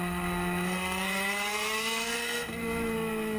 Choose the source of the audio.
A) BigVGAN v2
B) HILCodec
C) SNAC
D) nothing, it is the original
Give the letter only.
C